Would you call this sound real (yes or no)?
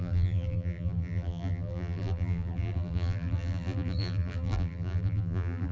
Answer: no